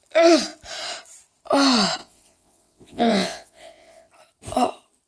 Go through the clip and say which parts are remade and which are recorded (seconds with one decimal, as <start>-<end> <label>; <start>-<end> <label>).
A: 0.0-2.0 recorded; 2.0-4.1 remade; 4.1-5.1 recorded